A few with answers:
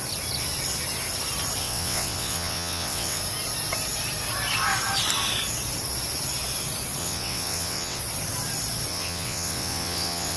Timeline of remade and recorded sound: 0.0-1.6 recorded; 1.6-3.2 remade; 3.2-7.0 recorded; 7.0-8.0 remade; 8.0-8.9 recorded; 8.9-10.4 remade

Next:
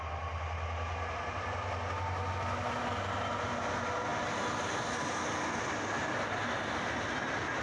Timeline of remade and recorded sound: 0.0-7.6 recorded

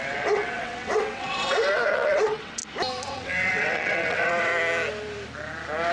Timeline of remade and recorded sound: 0.0-2.6 remade; 2.6-3.1 recorded; 3.1-4.5 remade; 4.5-5.9 recorded

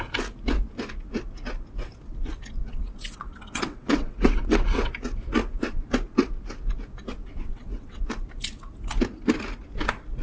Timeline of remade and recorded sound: 0.0-2.7 recorded; 2.7-4.9 remade; 4.9-7.2 recorded; 7.2-8.0 remade; 8.0-10.2 recorded

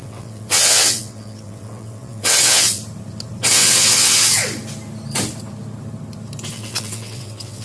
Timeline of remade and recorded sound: 0.0-2.8 remade; 2.8-3.5 recorded; 3.5-4.4 remade; 4.4-6.5 recorded; 6.5-7.6 remade

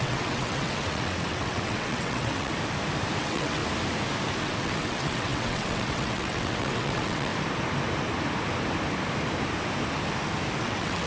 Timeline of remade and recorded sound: 0.0-2.5 remade; 2.5-3.2 recorded; 3.2-3.6 remade; 3.6-4.4 recorded; 4.4-7.3 remade; 7.3-10.6 recorded; 10.6-11.1 remade

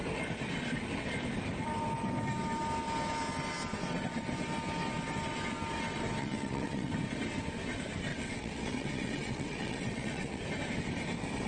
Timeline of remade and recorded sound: 0.0-6.2 recorded; 6.2-6.9 remade; 6.9-8.1 recorded; 8.1-10.4 remade; 10.4-11.5 recorded